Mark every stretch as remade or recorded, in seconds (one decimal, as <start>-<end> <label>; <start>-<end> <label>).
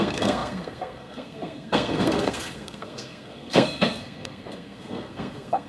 0.0-5.7 remade